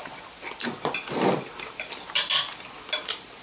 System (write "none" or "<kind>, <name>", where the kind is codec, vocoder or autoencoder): none